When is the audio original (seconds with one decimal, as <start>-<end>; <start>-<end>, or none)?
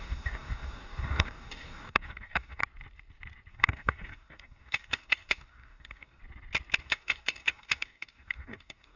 2.6-3.5; 6.2-6.8